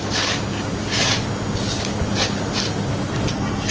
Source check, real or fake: real